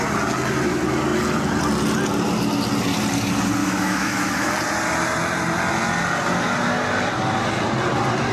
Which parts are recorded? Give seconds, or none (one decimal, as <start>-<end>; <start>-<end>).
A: 0.0-3.6; 4.5-8.3